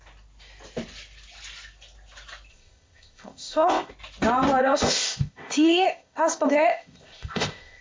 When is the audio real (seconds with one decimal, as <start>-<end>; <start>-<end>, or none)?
0.0-2.5; 3.9-4.6